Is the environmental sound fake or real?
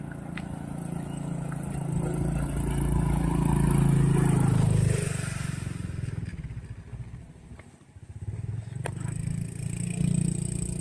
real